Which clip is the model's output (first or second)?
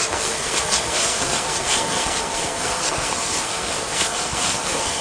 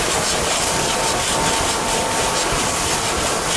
first